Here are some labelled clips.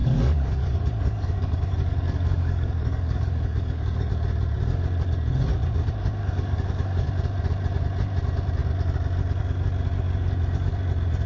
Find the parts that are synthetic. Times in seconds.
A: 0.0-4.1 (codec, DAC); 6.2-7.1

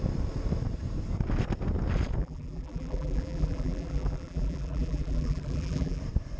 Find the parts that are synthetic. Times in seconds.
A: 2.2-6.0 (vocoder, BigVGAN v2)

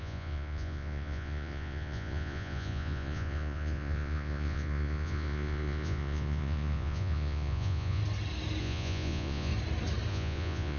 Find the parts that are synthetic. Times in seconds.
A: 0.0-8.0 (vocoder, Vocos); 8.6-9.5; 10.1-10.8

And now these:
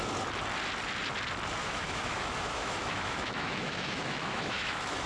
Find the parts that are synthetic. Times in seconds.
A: 1.6-5.1 (autoencoder, DAC-VAE)